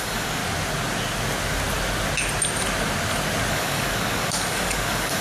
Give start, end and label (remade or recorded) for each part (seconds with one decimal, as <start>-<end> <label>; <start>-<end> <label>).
0.0-0.4 remade; 0.4-3.5 recorded; 3.5-5.2 remade